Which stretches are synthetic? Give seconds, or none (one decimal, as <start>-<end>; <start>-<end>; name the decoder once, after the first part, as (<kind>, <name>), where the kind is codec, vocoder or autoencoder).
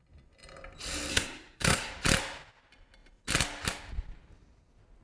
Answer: 1.1-1.9 (codec, SNAC)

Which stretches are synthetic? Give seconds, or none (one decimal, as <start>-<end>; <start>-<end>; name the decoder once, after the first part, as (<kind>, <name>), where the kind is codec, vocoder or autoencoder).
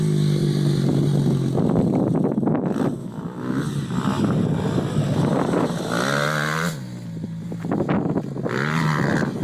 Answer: 3.0-3.6 (autoencoder, DAC-VAE)